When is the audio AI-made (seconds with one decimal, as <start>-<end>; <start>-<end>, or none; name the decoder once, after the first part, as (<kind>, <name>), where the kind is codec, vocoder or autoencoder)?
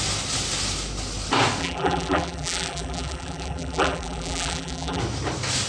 1.6-5.0 (vocoder, BigVGAN v2)